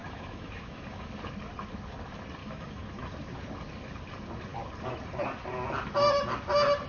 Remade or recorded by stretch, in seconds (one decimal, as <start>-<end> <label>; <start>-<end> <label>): 0.0-1.1 remade; 1.1-2.4 recorded; 2.4-3.1 remade; 3.1-6.9 recorded